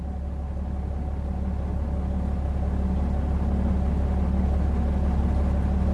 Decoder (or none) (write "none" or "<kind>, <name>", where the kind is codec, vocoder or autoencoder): none